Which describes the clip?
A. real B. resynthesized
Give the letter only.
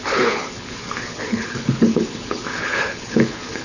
B